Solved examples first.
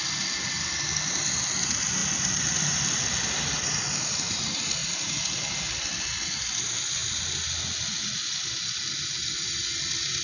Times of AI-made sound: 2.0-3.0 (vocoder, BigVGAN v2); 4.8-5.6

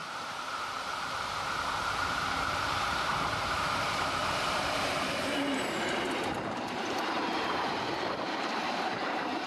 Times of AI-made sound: 0.0-9.5 (vocoder, BigVGAN v2)

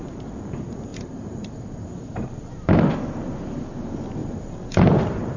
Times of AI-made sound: 0.9-2.3 (vocoder, BigVGAN v2); 4.2-5.4